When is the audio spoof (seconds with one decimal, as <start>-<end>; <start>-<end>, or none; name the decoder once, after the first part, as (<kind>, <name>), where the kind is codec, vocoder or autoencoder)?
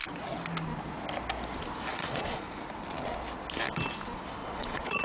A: 1.9-2.6 (vocoder, Vocos); 4.4-5.0